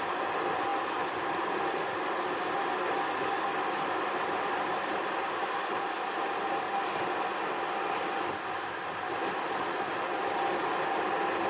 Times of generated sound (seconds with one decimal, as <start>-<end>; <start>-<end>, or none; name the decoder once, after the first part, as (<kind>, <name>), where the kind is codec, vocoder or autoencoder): none